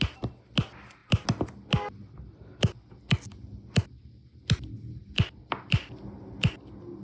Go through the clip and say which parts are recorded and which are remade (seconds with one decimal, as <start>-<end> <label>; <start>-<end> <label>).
0.0-7.0 recorded